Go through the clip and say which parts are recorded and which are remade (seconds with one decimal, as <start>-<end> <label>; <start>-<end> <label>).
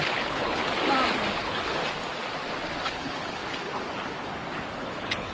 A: 0.0-0.6 remade; 0.6-1.4 recorded; 1.4-1.8 remade; 1.8-2.9 recorded; 2.9-3.4 remade; 3.4-4.8 recorded; 4.8-5.3 remade